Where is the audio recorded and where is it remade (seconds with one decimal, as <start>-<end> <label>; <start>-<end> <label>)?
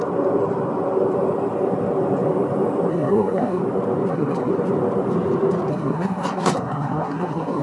0.0-2.9 recorded; 2.9-3.6 remade; 3.6-4.1 recorded; 4.1-4.5 remade; 4.5-5.7 recorded; 5.7-7.6 remade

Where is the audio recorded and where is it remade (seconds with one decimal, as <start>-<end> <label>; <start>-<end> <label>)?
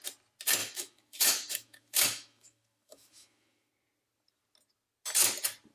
0.0-0.6 recorded; 0.6-3.7 remade; 3.7-5.7 recorded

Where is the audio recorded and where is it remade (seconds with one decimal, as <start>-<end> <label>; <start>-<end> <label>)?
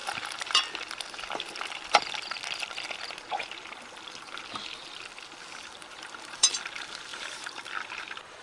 0.0-0.6 remade; 0.6-5.8 recorded; 5.8-6.5 remade; 6.5-7.1 recorded; 7.1-7.7 remade; 7.7-8.4 recorded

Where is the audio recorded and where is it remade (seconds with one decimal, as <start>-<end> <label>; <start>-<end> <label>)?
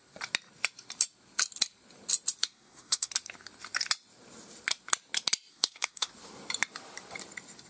0.0-2.4 recorded; 2.4-3.1 remade; 3.1-5.5 recorded; 5.5-6.1 remade; 6.1-7.7 recorded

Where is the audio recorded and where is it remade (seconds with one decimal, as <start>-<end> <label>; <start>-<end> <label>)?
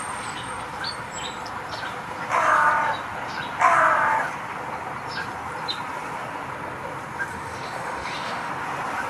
0.0-7.3 recorded; 7.3-8.5 remade; 8.5-9.1 recorded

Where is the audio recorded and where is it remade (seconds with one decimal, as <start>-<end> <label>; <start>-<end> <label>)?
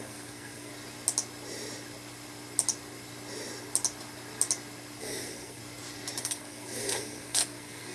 0.0-0.7 remade; 0.7-5.0 recorded; 5.0-5.6 remade; 5.6-6.2 recorded; 6.2-7.9 remade